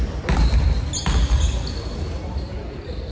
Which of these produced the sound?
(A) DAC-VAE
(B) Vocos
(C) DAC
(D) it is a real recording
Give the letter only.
D